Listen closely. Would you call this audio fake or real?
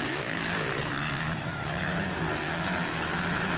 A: fake